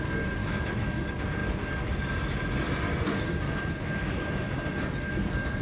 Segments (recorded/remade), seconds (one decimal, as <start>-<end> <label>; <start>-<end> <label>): 0.0-0.4 recorded; 0.4-0.9 remade; 0.9-5.6 recorded